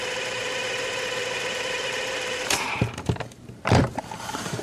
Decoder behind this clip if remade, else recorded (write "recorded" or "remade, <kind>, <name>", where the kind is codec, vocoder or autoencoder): remade, vocoder, BigVGAN v2